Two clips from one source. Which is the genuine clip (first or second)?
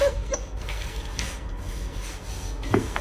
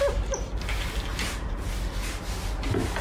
second